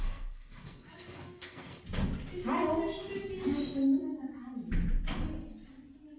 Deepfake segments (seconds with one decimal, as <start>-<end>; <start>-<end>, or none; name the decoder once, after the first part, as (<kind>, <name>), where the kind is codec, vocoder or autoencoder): 0.0-1.8 (codec, SNAC)